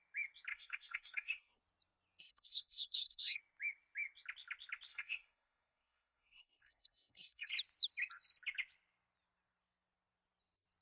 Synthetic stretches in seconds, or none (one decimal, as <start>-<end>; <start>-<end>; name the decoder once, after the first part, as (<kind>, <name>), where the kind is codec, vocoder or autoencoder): 0.5-1.6 (codec, SNAC); 2.2-3.4; 4.9-7.5